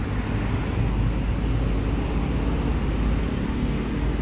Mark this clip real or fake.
real